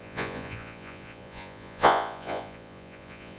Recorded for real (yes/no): no